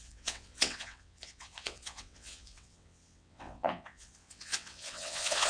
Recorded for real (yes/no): no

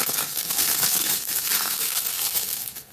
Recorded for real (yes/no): no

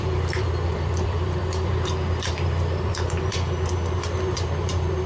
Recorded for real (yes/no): no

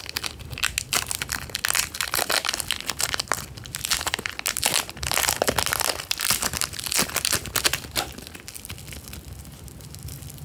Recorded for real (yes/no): yes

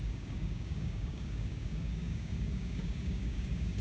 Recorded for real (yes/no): no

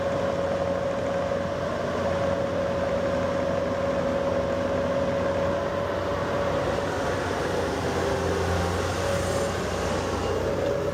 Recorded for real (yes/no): yes